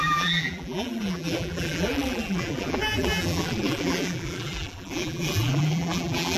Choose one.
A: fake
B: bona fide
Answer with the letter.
A